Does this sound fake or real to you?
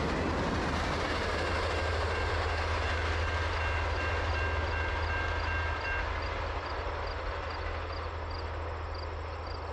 real